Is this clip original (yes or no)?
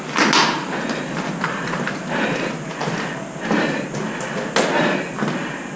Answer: yes